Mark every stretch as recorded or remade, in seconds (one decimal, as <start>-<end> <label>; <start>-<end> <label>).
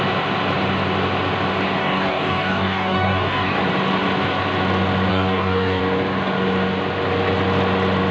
0.0-1.8 recorded; 1.8-3.6 remade; 3.6-5.1 recorded; 5.1-5.8 remade; 5.8-8.1 recorded